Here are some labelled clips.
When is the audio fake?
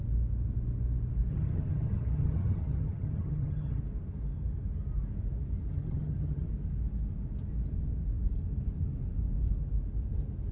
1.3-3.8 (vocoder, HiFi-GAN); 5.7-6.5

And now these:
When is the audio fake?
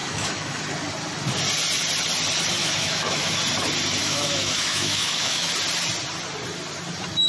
0.0-0.6 (autoencoder, DAC-VAE); 2.6-3.4; 4.0-5.5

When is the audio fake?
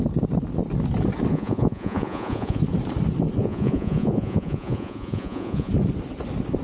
1.3-2.6 (vocoder, Vocos); 3.4-5.7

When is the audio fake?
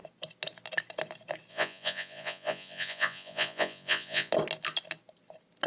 1.5-4.3 (vocoder, Vocos)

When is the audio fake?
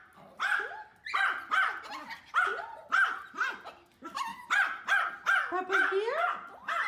none